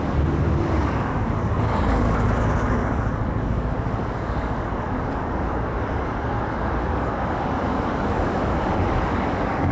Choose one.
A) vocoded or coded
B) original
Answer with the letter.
A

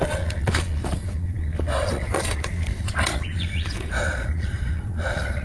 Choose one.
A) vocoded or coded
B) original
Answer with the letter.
A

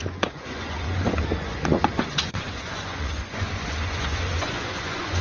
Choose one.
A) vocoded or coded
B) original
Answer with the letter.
A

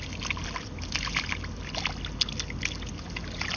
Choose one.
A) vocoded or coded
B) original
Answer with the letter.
B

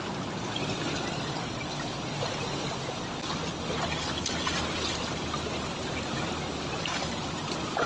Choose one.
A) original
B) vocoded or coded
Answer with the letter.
A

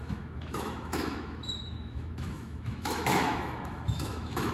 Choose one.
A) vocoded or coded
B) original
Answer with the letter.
A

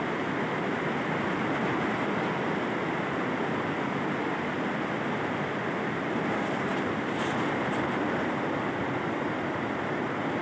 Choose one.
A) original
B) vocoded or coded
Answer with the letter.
A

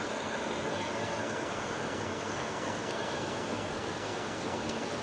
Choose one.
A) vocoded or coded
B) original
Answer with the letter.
A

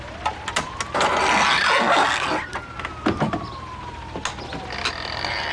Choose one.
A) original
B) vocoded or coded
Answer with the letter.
A